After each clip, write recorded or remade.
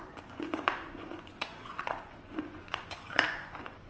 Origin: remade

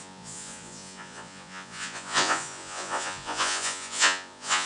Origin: remade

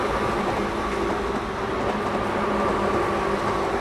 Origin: recorded